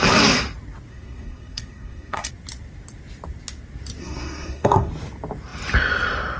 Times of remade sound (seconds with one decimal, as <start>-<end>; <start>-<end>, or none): 0.9-2.3; 4.0-4.9